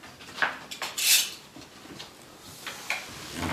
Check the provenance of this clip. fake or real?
real